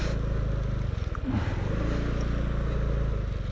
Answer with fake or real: real